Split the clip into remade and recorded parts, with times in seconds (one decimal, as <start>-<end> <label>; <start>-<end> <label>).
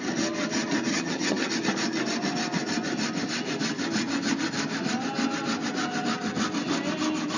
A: 0.0-0.9 recorded; 0.9-1.5 remade; 1.5-7.4 recorded